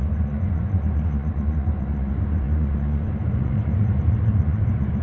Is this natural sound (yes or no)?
no